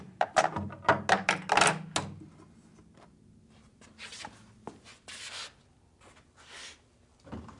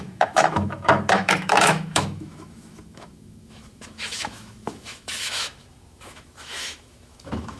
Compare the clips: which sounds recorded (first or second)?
first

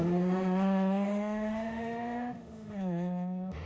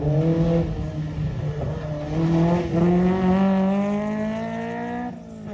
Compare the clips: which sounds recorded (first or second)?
second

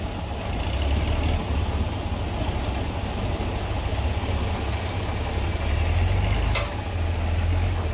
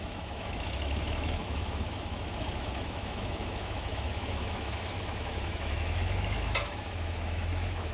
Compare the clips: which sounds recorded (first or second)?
first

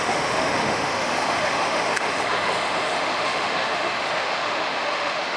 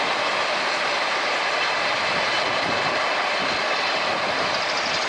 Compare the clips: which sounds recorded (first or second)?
second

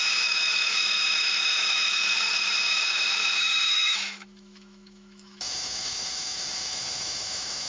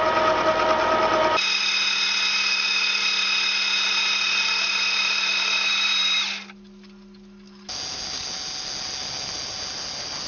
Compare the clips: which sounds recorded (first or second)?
second